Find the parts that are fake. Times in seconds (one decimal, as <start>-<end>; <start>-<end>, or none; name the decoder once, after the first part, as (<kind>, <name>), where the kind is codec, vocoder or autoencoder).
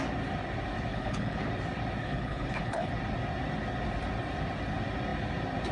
0.9-1.4 (codec, HILCodec); 2.0-2.9